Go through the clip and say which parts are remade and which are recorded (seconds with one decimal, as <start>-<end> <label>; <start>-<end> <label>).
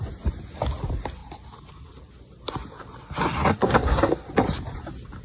0.0-3.5 recorded; 3.5-4.1 remade; 4.1-5.2 recorded